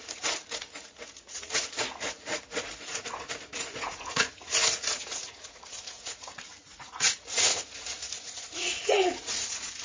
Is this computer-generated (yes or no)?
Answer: yes